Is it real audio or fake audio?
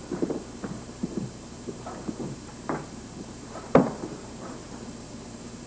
fake